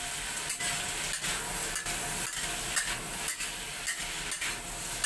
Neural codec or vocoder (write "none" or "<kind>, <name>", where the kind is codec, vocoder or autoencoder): none